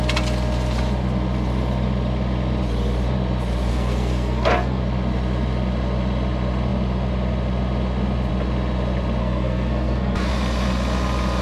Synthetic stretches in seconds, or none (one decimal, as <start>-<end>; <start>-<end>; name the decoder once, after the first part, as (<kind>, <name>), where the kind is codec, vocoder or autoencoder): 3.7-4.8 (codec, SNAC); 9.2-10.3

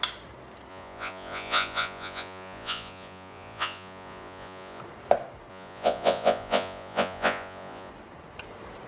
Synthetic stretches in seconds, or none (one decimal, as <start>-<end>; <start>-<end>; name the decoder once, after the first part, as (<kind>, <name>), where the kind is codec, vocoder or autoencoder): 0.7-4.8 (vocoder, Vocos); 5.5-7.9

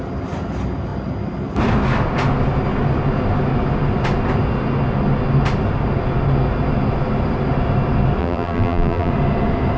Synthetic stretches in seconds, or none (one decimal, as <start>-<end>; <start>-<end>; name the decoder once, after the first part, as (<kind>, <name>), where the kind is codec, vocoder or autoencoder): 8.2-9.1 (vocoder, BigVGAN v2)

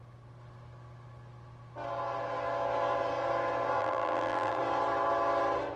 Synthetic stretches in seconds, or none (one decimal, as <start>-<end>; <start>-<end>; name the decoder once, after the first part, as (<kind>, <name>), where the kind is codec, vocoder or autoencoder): 3.8-4.6 (vocoder, BigVGAN v2)